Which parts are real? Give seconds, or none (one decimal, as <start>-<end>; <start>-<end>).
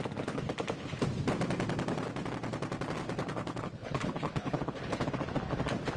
0.0-3.2; 5.1-6.0